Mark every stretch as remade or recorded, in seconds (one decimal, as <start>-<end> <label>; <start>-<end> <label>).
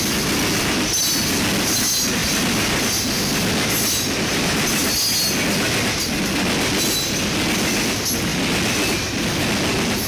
0.0-2.2 recorded; 2.2-2.9 remade; 2.9-10.1 recorded